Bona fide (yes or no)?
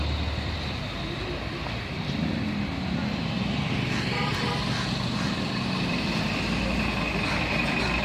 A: yes